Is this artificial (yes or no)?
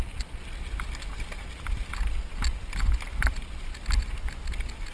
no